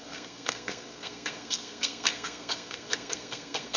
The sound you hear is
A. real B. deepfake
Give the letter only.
B